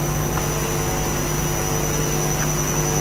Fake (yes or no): no